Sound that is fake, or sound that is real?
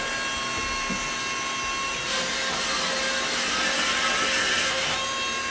real